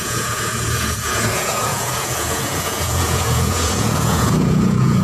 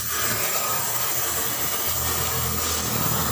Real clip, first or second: second